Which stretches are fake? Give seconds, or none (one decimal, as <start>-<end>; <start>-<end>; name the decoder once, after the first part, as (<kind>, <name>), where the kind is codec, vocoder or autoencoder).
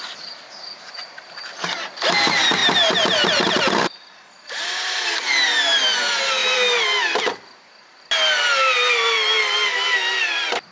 none